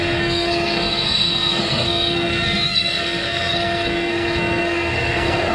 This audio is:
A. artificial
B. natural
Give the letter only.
A